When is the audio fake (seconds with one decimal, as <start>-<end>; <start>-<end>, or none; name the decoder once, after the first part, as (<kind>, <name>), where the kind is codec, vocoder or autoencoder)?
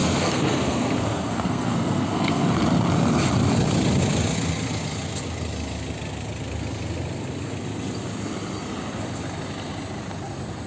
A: 0.0-2.5 (codec, SNAC)